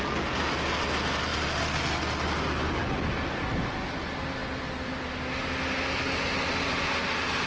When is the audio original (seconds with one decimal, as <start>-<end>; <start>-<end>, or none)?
0.0-7.5